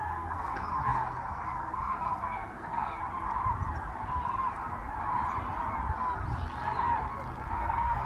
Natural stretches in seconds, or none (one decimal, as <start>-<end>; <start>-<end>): 3.0-7.5